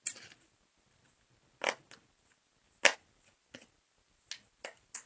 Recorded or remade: recorded